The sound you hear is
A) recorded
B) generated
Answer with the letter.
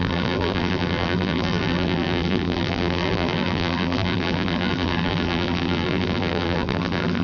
B